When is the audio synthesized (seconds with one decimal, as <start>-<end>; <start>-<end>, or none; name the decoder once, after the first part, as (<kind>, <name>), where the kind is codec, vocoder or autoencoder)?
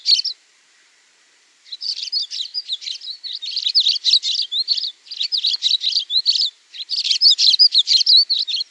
0.5-2.1 (vocoder, BigVGAN v2); 2.5-3.7; 4.7-8.7